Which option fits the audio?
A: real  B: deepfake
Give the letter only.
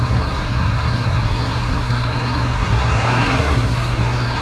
B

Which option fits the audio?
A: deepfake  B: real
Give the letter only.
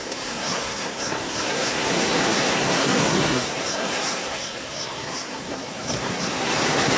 A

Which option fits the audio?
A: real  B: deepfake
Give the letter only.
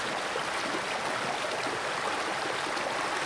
A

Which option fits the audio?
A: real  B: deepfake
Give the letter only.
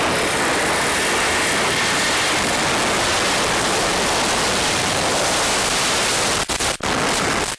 A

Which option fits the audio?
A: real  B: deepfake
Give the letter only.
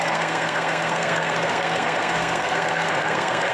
B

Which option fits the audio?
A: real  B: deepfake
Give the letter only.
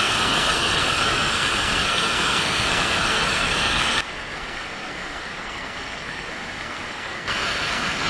B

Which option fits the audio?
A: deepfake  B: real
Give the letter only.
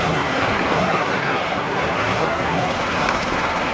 A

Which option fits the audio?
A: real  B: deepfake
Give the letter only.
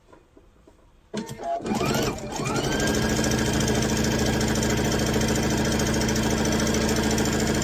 A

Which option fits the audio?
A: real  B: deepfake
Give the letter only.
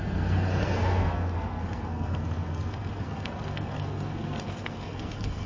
B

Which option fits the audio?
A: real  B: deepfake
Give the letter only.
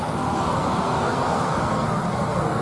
B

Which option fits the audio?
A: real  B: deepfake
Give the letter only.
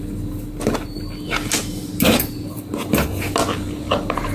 A